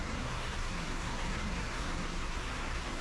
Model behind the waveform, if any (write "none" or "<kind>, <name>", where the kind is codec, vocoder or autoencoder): codec, SNAC